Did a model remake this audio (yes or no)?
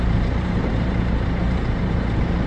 yes